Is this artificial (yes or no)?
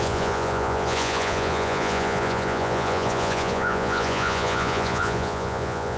yes